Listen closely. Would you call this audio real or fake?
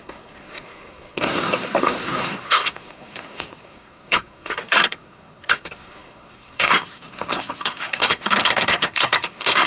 fake